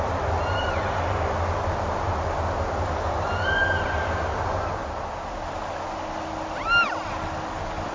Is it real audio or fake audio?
real